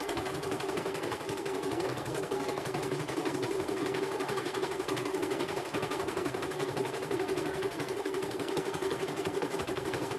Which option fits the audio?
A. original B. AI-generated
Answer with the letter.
B